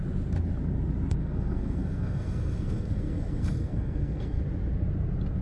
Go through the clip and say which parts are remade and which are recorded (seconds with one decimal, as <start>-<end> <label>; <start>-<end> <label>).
0.0-1.2 recorded; 1.2-4.4 remade; 4.4-5.4 recorded